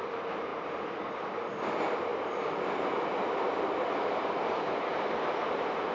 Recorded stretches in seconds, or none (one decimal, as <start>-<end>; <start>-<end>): 0.0-2.1